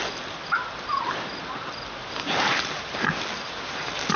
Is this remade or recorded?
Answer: recorded